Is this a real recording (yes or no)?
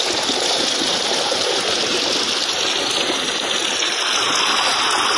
yes